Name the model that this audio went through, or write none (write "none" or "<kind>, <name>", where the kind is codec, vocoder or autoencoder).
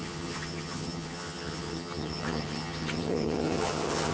vocoder, HiFi-GAN